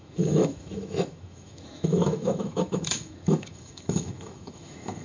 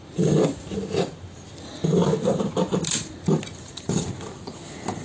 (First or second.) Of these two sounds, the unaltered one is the second